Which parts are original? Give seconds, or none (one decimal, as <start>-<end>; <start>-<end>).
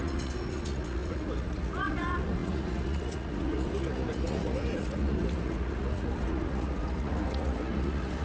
none